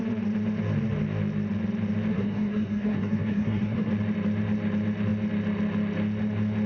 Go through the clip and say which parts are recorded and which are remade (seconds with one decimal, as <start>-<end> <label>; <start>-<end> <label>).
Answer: 0.0-2.1 recorded; 2.1-3.9 remade; 3.9-6.7 recorded

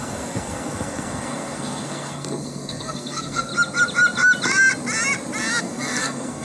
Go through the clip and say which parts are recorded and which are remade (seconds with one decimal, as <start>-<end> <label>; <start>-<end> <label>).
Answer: 0.0-3.5 remade; 3.5-5.6 recorded; 5.6-6.4 remade

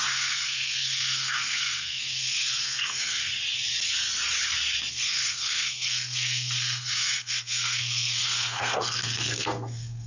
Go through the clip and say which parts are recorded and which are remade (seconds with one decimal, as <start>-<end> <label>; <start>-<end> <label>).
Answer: 0.0-3.2 remade; 3.2-4.9 recorded; 4.9-10.1 remade

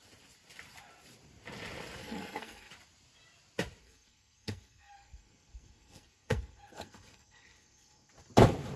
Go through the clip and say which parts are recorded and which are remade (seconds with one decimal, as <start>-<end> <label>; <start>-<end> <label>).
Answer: 0.0-2.0 recorded; 2.0-2.7 remade; 2.7-3.8 recorded; 3.8-8.1 remade; 8.1-8.8 recorded

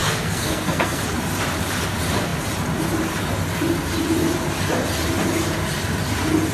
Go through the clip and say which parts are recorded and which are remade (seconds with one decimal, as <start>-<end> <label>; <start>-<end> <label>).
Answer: 0.0-1.0 remade; 1.0-6.5 recorded